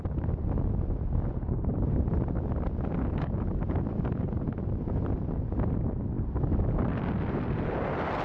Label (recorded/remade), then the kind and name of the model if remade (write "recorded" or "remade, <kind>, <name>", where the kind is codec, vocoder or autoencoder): recorded